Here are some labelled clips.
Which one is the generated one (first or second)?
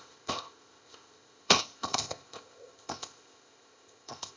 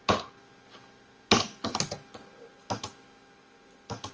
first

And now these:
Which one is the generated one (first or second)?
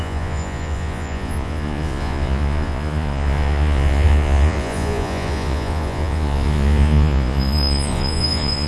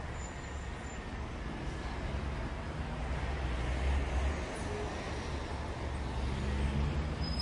first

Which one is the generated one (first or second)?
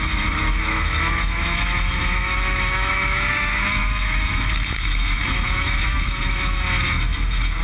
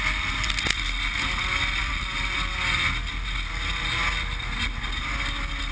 first